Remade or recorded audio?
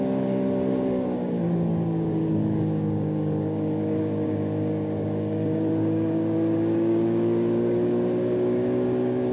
remade